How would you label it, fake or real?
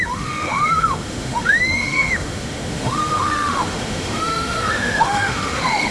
fake